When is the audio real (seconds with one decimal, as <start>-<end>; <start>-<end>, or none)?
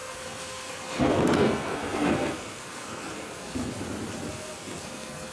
3.8-4.3